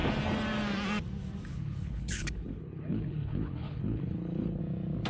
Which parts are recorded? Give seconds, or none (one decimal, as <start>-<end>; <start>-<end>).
0.0-1.5; 4.6-5.1